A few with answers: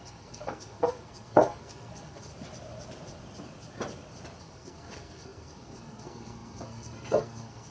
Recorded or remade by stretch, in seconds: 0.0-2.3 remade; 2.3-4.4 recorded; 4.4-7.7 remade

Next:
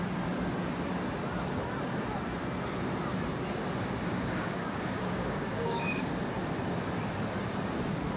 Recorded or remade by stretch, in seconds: 0.0-4.0 recorded; 4.0-6.2 remade; 6.2-8.2 recorded

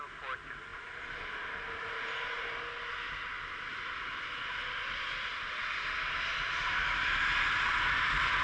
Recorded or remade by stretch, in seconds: 0.0-8.4 recorded

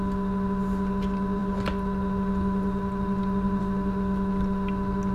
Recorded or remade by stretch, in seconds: 0.0-5.1 recorded

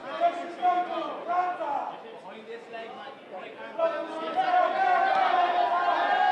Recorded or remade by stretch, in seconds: 0.0-6.3 recorded

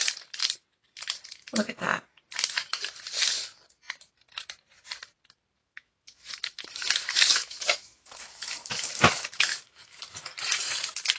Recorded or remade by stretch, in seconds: 0.0-5.6 recorded; 5.6-10.0 remade; 10.0-11.2 recorded